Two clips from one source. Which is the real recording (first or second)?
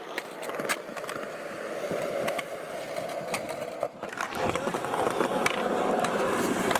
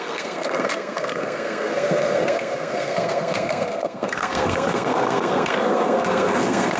first